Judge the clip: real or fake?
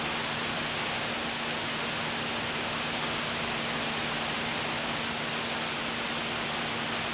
real